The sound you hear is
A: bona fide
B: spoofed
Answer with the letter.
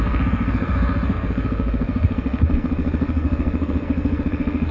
B